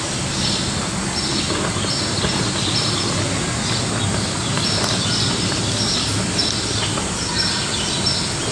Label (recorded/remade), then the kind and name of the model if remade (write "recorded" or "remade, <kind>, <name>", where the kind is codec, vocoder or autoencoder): recorded